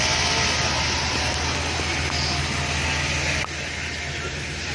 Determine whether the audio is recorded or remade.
recorded